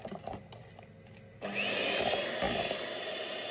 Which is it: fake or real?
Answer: real